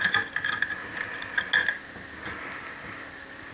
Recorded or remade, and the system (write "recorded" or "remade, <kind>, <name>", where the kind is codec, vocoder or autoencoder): recorded